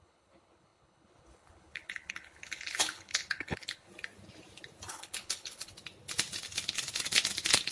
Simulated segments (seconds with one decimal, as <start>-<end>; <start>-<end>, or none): 0.0-3.9; 4.9-5.7